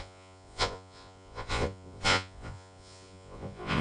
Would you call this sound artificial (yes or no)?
yes